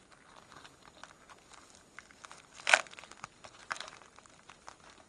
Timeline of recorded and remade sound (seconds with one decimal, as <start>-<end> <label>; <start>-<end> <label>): 0.0-3.6 recorded; 3.6-4.2 remade; 4.2-5.1 recorded